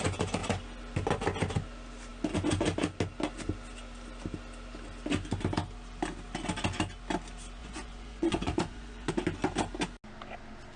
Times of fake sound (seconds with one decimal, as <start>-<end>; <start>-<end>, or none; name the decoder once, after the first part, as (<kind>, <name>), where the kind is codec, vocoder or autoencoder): 7.6-9.1 (vocoder, Vocos)